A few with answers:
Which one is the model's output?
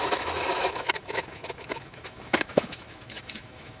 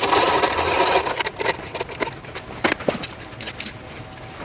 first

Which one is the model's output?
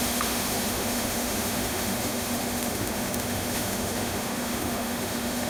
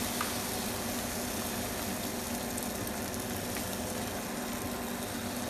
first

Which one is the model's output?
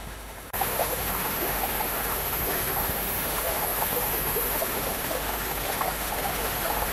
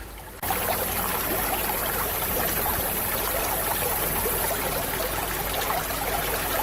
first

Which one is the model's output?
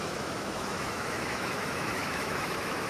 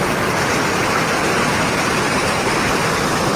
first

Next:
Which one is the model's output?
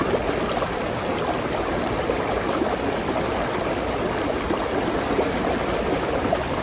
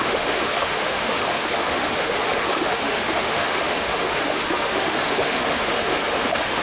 second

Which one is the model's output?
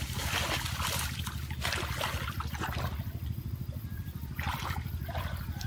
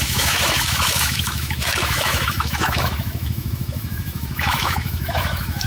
second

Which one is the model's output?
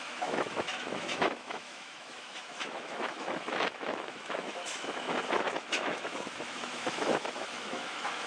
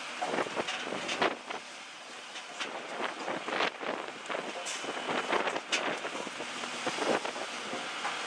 first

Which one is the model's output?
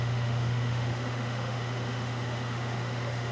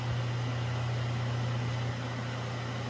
first